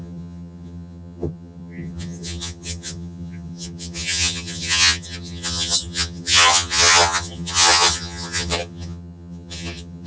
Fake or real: fake